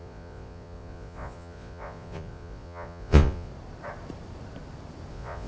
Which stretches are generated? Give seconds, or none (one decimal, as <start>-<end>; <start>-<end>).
0.0-3.5; 5.1-5.5